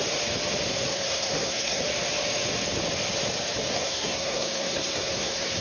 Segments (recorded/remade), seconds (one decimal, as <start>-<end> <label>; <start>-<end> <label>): 0.0-0.9 recorded; 0.9-1.8 remade; 1.8-3.7 recorded; 3.7-5.6 remade